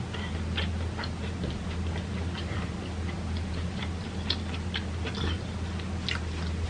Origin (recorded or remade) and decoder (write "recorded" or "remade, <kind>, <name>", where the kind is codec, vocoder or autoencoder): recorded